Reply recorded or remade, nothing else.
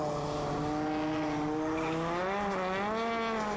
recorded